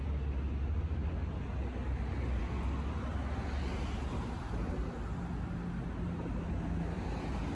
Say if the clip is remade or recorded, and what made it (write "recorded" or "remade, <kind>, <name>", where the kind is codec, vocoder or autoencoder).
recorded